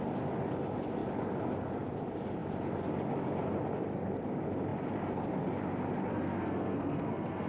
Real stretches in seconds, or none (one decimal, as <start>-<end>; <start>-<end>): 0.0-6.1